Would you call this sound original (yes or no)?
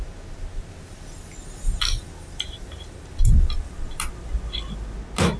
yes